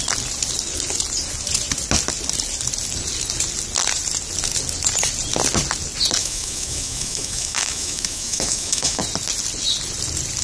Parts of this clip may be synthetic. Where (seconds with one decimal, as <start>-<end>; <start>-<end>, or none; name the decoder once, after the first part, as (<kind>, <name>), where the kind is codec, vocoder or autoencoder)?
6.2-9.0 (autoencoder, DAC-VAE)